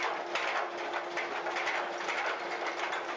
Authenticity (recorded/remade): recorded